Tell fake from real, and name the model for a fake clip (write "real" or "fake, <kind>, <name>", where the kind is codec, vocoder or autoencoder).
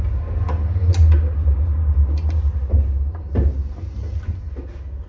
real